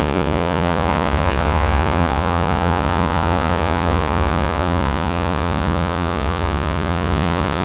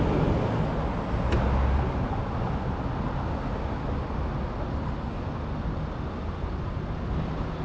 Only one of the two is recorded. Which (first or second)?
second